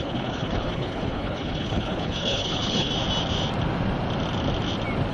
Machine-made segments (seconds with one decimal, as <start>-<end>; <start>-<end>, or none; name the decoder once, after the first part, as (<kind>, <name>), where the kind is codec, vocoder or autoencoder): 0.0-2.9 (codec, HILCodec)